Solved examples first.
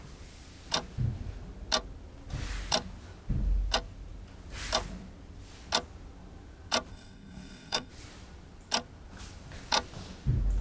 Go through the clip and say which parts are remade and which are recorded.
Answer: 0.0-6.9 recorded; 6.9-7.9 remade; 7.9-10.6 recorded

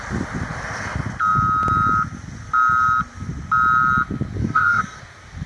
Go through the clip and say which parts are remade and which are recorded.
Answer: 0.0-4.4 recorded; 4.4-5.0 remade; 5.0-5.5 recorded

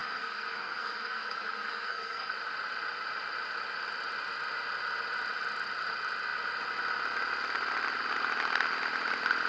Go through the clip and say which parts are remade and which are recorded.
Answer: 0.0-2.3 remade; 2.3-9.5 recorded